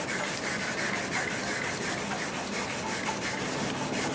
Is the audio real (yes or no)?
yes